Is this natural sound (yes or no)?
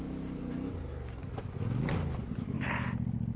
yes